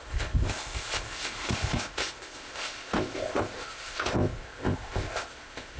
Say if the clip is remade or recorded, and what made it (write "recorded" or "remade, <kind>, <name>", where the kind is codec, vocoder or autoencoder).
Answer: remade, codec, ZipCodec